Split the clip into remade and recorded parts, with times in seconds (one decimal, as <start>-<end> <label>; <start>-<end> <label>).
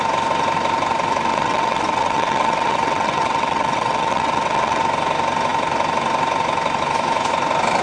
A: 0.0-1.3 recorded; 1.3-4.8 remade; 4.8-7.8 recorded